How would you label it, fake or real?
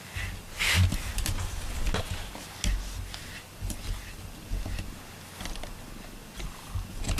real